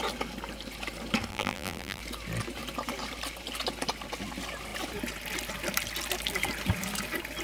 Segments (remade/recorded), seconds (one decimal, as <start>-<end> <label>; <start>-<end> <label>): 0.0-1.3 recorded; 1.3-2.0 remade; 2.0-7.4 recorded